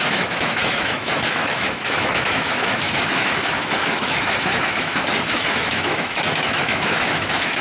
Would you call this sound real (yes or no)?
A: no